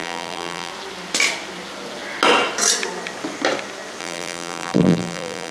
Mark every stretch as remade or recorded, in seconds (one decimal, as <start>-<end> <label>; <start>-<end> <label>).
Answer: 0.0-0.7 remade; 0.7-4.0 recorded; 4.0-5.5 remade